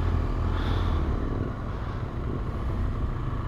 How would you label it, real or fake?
real